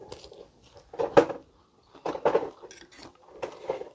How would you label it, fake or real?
real